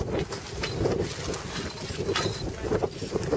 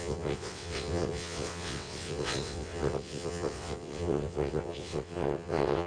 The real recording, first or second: first